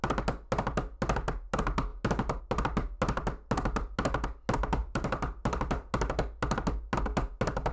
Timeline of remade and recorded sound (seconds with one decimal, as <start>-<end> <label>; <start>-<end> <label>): 0.0-4.8 recorded; 4.8-5.9 remade; 5.9-7.7 recorded